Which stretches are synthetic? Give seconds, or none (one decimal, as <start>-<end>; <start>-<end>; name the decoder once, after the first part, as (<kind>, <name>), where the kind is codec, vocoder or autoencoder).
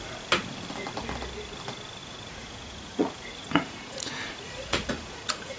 2.0-5.6 (vocoder, Vocos)